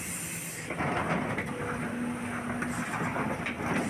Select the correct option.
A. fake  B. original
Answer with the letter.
B